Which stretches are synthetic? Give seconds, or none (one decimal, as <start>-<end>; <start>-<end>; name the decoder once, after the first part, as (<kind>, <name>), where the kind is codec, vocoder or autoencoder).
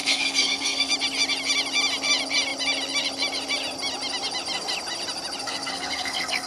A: 0.0-0.9 (codec, SNAC); 5.4-6.5